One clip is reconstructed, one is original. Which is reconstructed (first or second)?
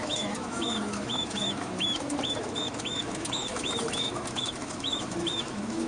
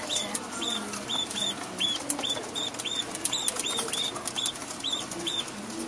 first